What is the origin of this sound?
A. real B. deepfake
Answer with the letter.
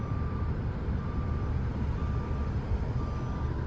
A